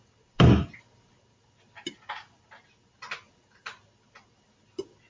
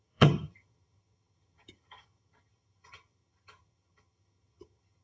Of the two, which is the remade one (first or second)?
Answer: second